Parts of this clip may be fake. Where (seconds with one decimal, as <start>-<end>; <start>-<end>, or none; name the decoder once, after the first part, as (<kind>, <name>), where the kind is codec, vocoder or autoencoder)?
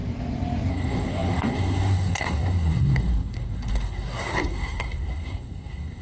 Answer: 0.7-6.0 (codec, SNAC)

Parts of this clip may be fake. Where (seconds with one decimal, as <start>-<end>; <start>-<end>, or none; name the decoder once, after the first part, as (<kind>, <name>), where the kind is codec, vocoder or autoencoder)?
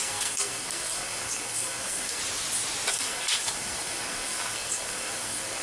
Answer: 0.0-2.2 (codec, SNAC); 2.9-5.6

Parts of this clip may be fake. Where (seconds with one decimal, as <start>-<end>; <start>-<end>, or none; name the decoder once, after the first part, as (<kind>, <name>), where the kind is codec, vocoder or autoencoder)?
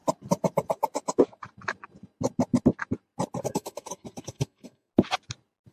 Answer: 3.4-4.9 (codec, SNAC)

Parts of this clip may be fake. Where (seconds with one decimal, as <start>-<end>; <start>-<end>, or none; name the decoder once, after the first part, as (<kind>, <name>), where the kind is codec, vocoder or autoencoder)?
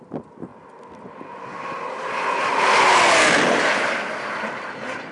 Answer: none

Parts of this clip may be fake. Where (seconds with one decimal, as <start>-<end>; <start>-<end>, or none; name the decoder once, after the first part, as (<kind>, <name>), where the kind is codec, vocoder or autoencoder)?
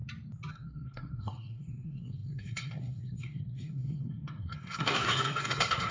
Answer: 0.5-5.9 (codec, SNAC)